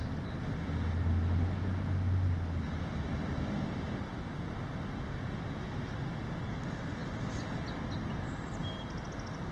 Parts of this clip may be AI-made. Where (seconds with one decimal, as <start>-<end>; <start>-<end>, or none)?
none